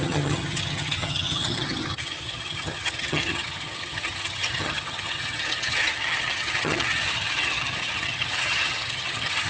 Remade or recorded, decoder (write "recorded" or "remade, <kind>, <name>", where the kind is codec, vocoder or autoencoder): remade, vocoder, HiFi-GAN